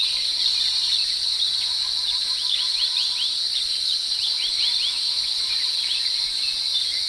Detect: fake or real real